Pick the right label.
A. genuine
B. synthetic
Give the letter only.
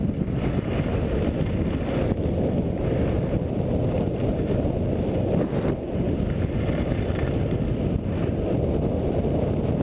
A